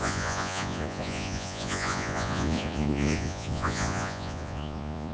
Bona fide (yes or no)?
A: no